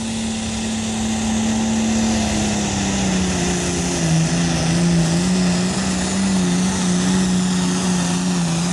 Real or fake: real